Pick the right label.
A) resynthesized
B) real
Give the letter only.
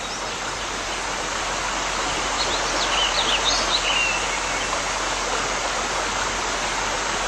B